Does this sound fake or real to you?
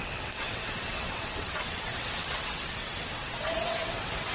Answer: fake